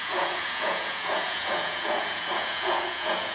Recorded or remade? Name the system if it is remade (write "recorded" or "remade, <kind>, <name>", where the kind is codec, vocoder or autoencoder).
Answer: remade, vocoder, Vocos